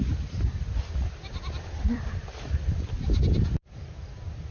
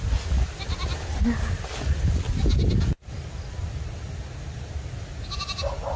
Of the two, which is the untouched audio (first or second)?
second